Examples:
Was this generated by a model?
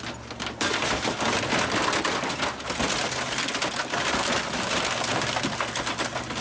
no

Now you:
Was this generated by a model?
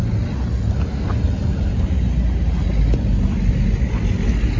no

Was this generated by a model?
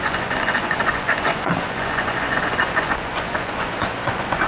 yes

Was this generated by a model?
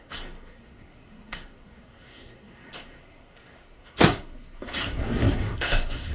yes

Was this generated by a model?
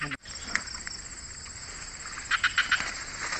no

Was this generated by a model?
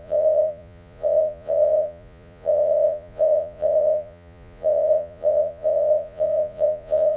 yes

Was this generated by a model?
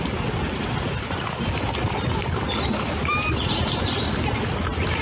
no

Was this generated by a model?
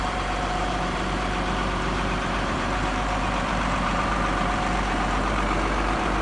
yes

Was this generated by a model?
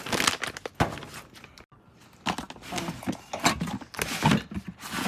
no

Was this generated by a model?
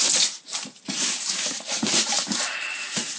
yes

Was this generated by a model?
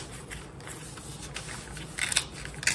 no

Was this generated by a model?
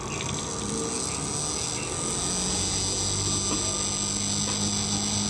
no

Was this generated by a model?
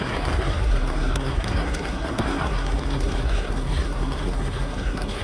yes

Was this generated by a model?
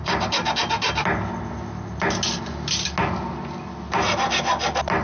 no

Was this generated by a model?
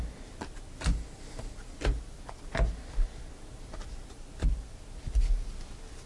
no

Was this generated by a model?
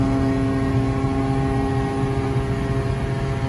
no